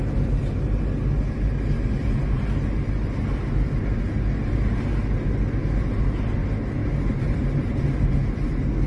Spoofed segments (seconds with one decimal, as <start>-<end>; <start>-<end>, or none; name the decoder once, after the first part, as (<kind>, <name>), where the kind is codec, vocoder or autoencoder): 6.8-7.7 (vocoder, BigVGAN v2)